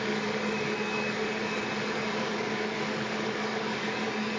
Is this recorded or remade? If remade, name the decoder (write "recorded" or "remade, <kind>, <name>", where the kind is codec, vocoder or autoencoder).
remade, codec, DAC